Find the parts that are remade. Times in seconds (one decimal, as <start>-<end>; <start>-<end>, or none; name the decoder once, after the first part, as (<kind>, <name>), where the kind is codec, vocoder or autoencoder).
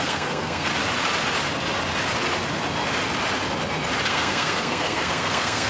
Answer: 0.0-0.7 (codec, SNAC); 4.1-5.7